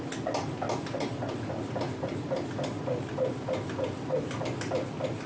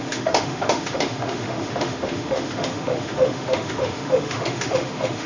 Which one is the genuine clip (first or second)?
first